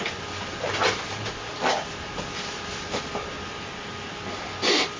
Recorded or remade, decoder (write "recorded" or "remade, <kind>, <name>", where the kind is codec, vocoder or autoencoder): recorded